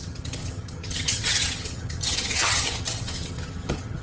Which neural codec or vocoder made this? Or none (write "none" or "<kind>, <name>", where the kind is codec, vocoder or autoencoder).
vocoder, HiFi-GAN